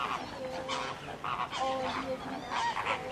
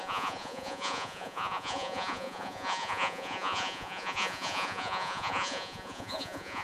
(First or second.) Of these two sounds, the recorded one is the first